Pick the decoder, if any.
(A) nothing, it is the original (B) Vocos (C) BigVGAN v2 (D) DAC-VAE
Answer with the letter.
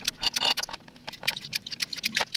A